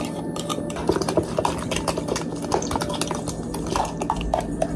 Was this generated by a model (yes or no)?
no